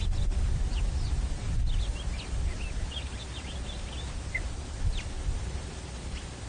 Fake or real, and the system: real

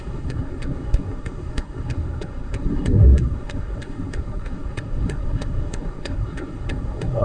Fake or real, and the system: fake, codec, SNAC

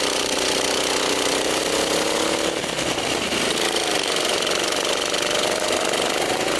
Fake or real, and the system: real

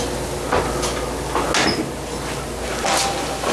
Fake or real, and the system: real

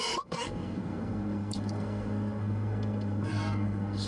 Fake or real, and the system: fake, codec, SNAC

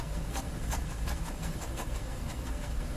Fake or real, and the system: fake, codec, SNAC